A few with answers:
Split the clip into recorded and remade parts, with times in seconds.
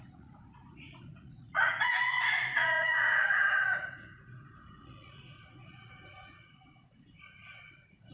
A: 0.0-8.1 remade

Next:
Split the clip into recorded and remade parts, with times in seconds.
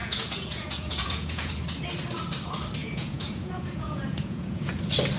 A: 0.0-1.5 remade; 1.5-2.8 recorded; 2.8-4.8 remade; 4.8-5.2 recorded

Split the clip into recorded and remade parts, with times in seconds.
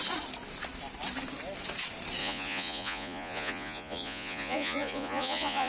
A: 0.0-2.2 recorded; 2.2-5.7 remade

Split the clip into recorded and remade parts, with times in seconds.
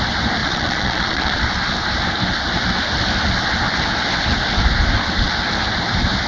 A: 0.0-0.4 recorded; 0.4-1.4 remade; 1.4-6.3 recorded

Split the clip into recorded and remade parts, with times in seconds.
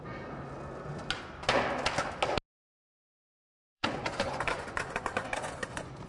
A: 0.0-2.6 recorded; 2.6-6.1 remade